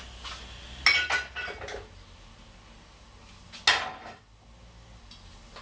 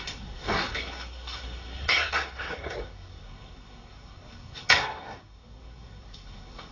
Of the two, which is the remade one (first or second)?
second